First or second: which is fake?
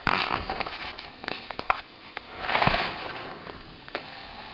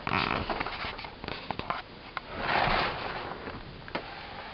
first